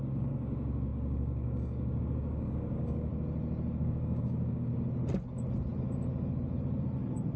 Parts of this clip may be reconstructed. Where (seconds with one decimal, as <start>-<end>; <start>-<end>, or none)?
0.0-3.1; 3.8-4.7